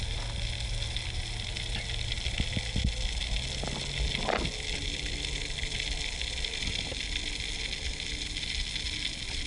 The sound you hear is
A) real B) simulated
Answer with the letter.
A